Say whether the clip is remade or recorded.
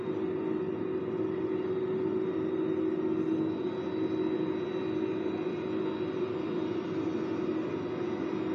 recorded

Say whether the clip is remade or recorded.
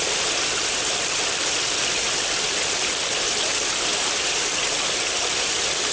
recorded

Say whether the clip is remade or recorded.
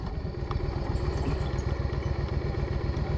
recorded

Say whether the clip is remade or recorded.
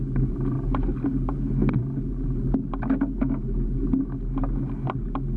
recorded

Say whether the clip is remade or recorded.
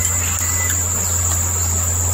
recorded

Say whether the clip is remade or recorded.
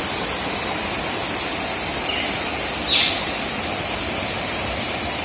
recorded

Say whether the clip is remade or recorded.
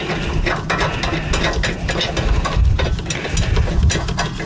recorded